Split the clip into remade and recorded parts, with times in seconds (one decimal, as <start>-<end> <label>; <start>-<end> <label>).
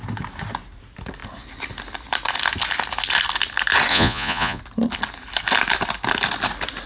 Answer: 0.0-3.9 recorded; 3.9-4.6 remade; 4.6-6.9 recorded